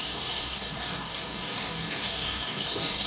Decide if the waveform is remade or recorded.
remade